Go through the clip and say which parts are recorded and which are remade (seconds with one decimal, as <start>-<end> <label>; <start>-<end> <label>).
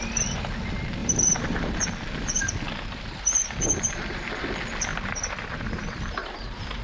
0.0-1.0 recorded; 1.0-1.8 remade; 1.8-4.9 recorded; 4.9-6.8 remade